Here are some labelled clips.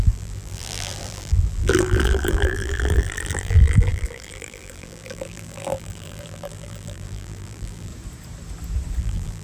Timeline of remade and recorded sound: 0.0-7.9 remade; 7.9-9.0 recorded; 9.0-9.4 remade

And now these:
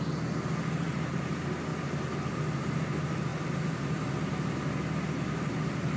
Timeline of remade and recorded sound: 0.0-6.0 recorded

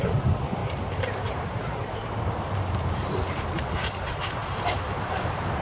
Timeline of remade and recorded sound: 0.0-0.6 recorded; 0.6-4.0 remade; 4.0-4.4 recorded; 4.4-5.6 remade

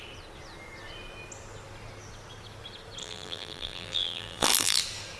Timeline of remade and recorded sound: 0.0-3.0 recorded; 3.0-4.8 remade; 4.8-5.2 recorded

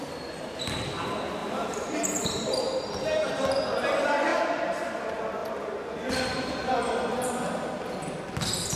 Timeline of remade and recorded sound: 0.0-1.4 recorded; 1.4-3.4 remade; 3.4-4.3 recorded; 4.3-4.9 remade; 4.9-5.4 recorded; 5.4-8.2 remade; 8.2-8.8 recorded

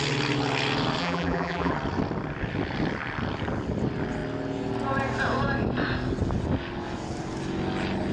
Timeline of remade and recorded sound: 0.0-1.0 recorded; 1.0-1.7 remade; 1.7-8.1 recorded

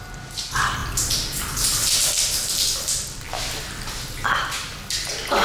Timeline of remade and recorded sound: 0.0-0.8 recorded; 0.8-4.0 remade; 4.0-5.4 recorded